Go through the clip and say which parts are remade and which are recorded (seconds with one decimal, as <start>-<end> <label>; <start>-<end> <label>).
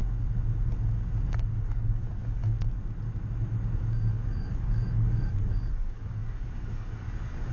0.0-1.6 recorded; 1.6-2.4 remade; 2.4-4.1 recorded; 4.1-7.5 remade